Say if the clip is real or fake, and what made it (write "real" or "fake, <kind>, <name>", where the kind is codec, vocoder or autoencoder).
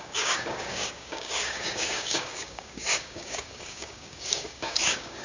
fake, codec, DAC